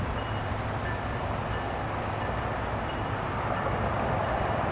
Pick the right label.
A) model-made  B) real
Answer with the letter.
B